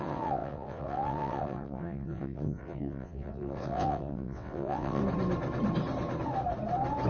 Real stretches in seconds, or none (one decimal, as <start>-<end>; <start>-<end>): 5.0-7.1